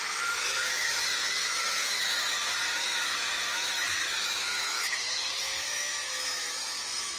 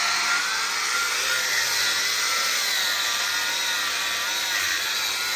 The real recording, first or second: second